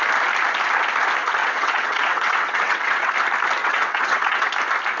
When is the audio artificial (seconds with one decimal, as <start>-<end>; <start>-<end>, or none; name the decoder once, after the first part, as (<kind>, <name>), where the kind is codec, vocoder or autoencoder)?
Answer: 1.4-3.1 (vocoder, WaveNeXt); 3.6-4.5